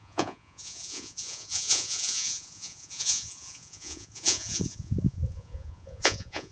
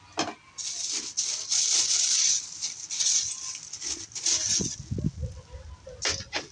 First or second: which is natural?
second